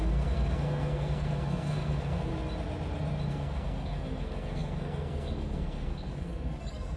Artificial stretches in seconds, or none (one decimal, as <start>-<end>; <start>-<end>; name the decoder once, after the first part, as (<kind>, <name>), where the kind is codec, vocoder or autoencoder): 0.0-2.3 (codec, SNAC); 3.3-7.0